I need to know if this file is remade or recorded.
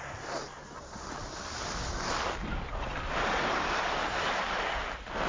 recorded